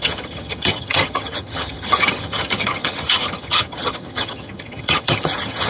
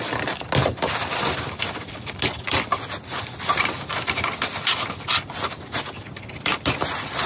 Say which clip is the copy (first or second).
first